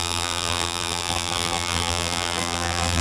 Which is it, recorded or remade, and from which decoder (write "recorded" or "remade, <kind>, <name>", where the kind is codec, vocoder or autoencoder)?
remade, vocoder, BigVGAN v2